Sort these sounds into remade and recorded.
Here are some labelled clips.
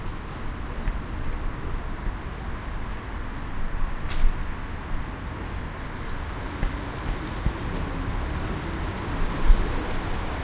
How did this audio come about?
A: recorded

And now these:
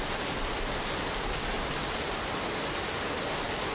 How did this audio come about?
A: recorded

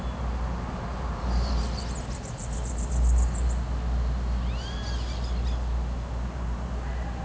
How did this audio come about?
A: recorded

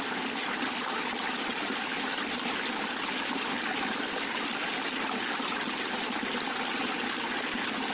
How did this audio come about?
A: recorded